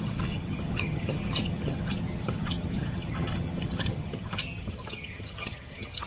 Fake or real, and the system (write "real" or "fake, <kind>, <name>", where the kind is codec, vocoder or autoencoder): fake, vocoder, HiFi-GAN